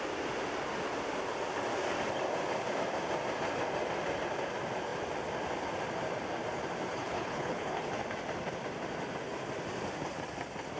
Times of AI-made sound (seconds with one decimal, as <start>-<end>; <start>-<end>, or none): 6.9-7.9